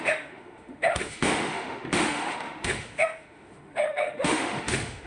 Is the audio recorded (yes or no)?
no